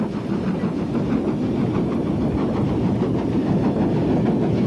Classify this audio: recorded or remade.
recorded